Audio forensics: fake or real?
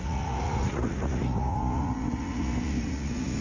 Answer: fake